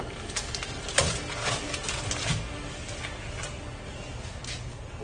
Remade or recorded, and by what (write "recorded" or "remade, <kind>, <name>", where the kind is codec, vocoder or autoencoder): recorded